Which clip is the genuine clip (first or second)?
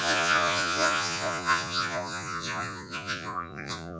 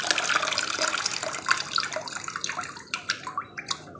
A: second